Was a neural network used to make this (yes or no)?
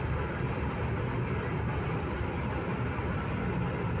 no